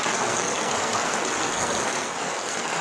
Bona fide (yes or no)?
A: no